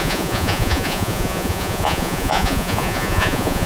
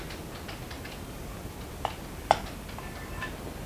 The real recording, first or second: second